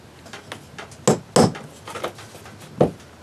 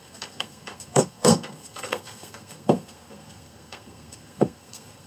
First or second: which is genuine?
first